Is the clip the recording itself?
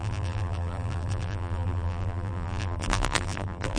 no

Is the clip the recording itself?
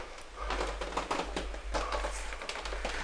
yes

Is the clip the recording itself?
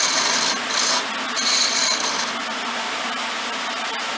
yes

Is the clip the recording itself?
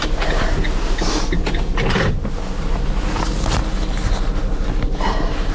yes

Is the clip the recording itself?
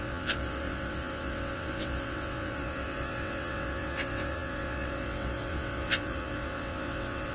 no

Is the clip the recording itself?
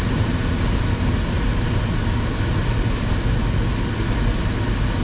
yes